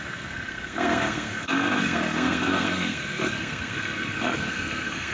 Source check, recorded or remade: remade